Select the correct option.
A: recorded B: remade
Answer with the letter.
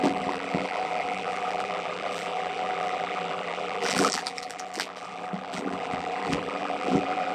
B